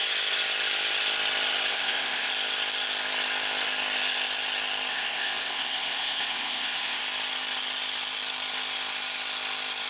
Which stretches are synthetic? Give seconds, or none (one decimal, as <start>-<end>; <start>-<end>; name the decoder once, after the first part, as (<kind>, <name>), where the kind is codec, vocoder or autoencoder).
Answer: 1.7-2.3 (codec, ZipCodec); 4.9-7.0